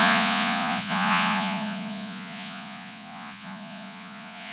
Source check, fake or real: fake